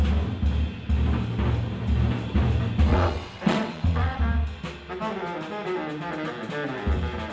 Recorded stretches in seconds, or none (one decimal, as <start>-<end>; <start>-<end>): 0.0-2.9; 4.2-7.3